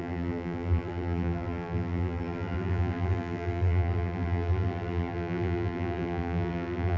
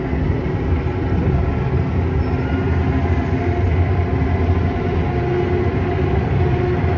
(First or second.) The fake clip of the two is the first